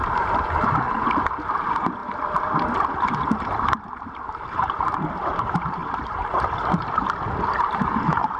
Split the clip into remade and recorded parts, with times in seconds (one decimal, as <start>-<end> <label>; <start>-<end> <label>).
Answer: 0.0-2.0 remade; 2.0-3.2 recorded; 3.2-8.4 remade